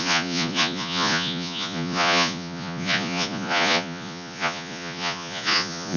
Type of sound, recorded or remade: remade